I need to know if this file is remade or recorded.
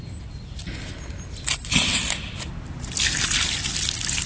recorded